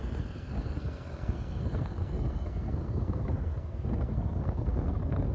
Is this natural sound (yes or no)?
no